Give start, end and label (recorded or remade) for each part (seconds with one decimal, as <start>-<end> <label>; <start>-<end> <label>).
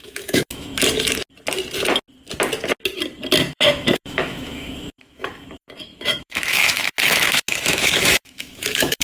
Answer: 0.0-0.7 remade; 0.7-3.5 recorded; 3.5-9.0 remade